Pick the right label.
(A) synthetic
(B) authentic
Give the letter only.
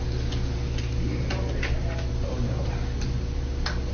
B